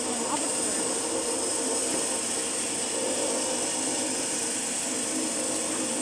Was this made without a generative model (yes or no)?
yes